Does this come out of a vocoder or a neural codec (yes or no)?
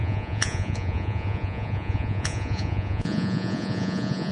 yes